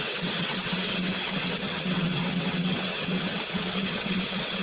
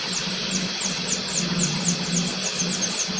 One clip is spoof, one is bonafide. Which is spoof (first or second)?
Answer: first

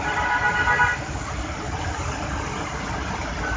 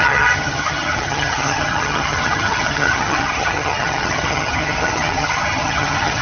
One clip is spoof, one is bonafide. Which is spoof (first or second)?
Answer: second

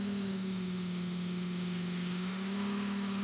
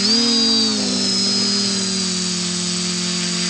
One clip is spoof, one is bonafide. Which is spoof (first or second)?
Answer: first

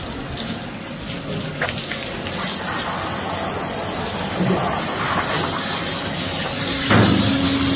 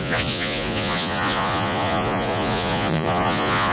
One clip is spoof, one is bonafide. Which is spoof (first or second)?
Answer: second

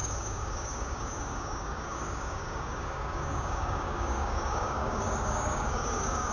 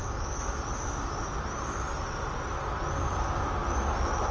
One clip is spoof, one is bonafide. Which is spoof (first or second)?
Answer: first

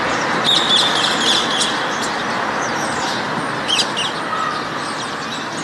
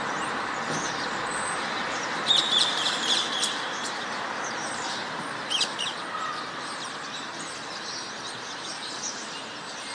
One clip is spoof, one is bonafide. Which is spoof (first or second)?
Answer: second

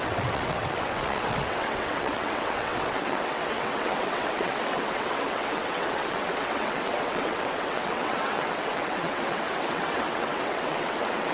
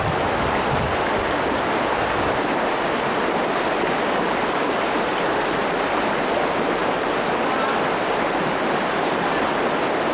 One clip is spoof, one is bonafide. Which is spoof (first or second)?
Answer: first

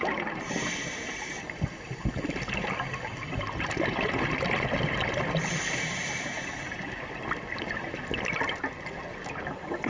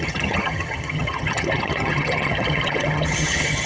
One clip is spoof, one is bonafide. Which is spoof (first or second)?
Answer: second